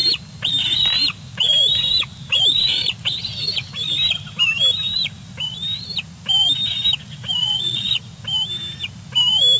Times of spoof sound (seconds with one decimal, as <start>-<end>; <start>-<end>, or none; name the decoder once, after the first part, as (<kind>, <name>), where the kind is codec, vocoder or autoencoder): 7.4-8.0 (vocoder, Vocos)